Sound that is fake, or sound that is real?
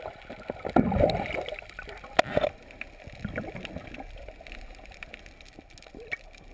real